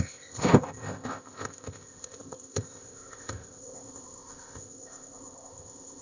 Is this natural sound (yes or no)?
no